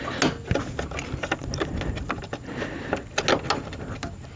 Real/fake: real